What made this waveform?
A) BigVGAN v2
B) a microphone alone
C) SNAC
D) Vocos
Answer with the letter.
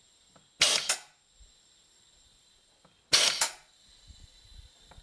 B